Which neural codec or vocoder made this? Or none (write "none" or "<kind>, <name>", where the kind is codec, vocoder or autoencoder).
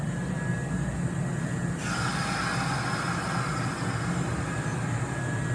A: none